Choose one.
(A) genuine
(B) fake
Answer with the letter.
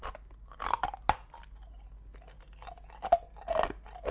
A